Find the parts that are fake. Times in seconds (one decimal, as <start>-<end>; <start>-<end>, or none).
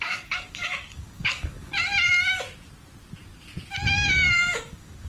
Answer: 0.0-1.7; 3.9-5.1